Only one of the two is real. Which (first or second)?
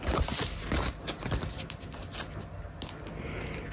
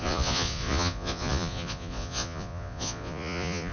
first